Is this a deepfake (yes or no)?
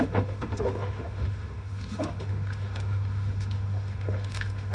yes